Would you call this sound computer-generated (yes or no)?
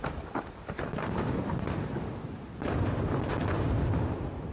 no